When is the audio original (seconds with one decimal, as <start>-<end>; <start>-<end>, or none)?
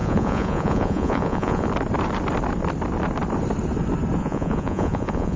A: 1.7-4.2